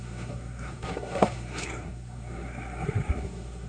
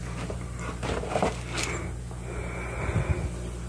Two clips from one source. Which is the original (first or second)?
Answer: second